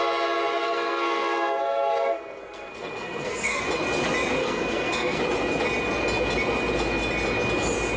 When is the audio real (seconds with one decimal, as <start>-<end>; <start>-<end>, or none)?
0.0-0.5; 3.6-4.4; 5.2-8.0